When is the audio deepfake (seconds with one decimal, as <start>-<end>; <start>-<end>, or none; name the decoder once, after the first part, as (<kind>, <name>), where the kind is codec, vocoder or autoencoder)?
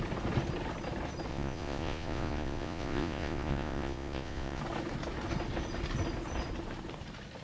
1.3-4.6 (vocoder, Vocos)